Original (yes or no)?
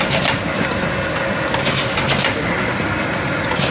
yes